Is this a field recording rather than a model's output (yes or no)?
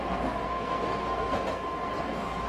no